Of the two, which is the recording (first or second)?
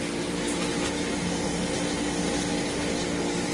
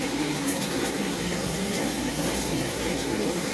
first